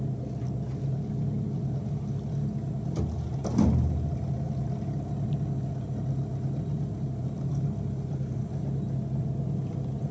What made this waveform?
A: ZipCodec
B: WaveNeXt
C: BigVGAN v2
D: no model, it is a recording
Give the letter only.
D